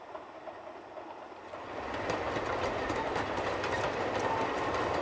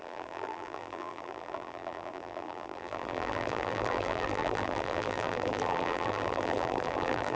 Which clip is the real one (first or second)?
first